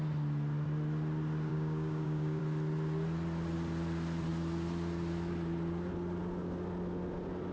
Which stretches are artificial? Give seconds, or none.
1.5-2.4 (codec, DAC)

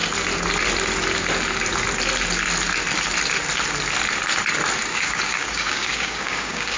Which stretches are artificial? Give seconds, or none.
4.9-6.8 (codec, DAC)

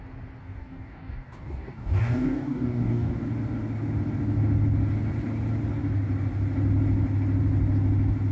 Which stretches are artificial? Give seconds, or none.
0.4-3.1 (codec, DAC)

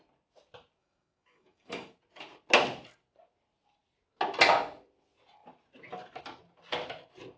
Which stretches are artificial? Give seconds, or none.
0.8-1.9 (codec, DAC)